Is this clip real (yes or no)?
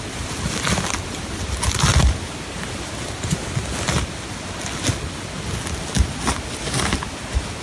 yes